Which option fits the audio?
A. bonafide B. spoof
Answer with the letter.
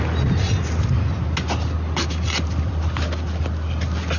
A